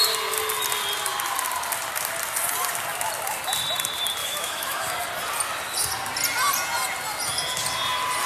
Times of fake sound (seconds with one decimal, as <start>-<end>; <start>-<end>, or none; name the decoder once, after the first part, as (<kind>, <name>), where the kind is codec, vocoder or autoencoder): 4.2-4.9 (autoencoder, DAC-VAE)